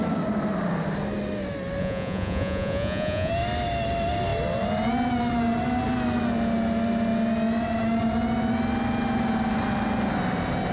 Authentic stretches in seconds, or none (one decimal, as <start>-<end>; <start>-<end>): 0.0-1.8; 3.3-10.7